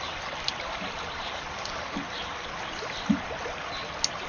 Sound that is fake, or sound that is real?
real